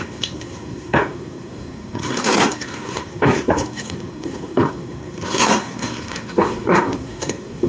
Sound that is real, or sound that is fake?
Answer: fake